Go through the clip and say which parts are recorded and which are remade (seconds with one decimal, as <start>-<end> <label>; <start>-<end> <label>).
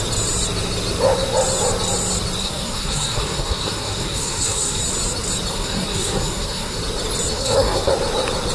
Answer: 0.0-2.4 recorded; 2.4-4.8 remade; 4.8-5.5 recorded; 5.5-6.8 remade; 6.8-7.3 recorded; 7.3-7.9 remade; 7.9-8.5 recorded